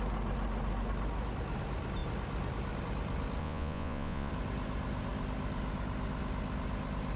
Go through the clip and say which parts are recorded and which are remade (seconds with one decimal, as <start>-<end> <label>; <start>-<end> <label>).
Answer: 0.0-3.4 recorded; 3.4-4.3 remade; 4.3-7.2 recorded